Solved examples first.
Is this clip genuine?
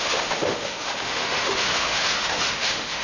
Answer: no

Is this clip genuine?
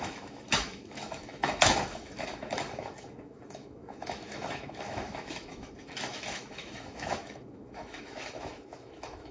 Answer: no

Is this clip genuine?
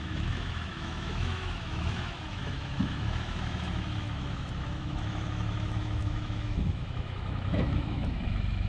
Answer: no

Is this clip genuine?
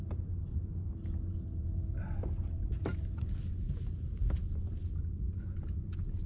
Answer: yes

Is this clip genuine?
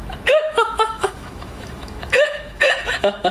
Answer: no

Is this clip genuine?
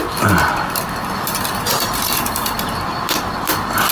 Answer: yes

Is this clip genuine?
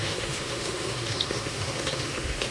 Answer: no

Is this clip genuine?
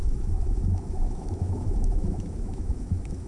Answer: no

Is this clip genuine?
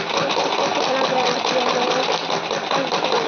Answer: yes